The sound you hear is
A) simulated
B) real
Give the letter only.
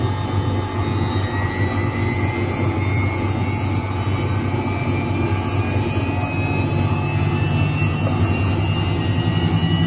B